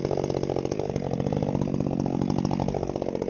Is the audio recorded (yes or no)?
yes